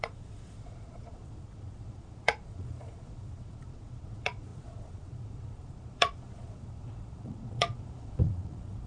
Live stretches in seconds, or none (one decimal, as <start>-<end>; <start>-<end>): none